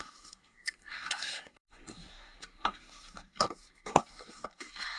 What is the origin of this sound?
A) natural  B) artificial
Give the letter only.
B